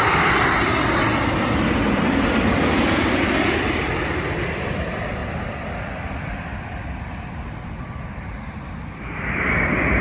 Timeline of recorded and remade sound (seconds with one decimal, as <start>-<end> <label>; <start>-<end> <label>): 0.0-0.7 remade; 0.7-2.5 recorded; 2.5-5.2 remade; 5.2-5.8 recorded; 5.8-10.0 remade